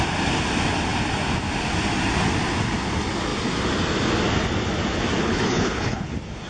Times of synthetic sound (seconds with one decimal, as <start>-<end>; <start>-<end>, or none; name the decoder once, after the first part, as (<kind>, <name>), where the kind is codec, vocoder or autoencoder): 5.2-6.1 (codec, HILCodec)